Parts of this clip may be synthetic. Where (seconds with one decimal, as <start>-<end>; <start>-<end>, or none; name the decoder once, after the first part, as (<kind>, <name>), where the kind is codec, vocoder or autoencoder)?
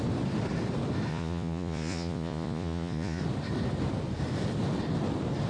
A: 1.1-3.2 (vocoder, Vocos)